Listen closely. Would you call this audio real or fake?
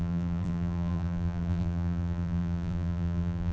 fake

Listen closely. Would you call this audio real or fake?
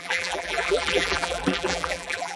fake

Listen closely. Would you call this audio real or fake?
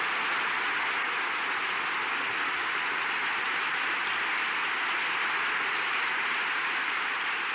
real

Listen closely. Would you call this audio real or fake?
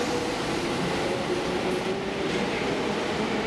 fake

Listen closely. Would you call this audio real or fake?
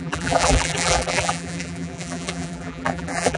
fake